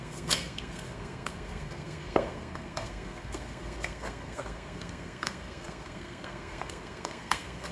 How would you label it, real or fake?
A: fake